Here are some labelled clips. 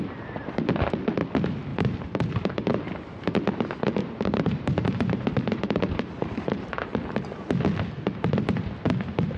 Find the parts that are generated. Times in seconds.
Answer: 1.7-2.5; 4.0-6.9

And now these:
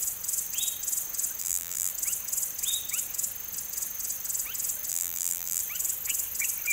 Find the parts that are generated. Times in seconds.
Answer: 1.4-1.9; 4.9-5.6